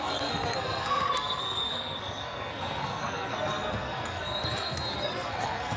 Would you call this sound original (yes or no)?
no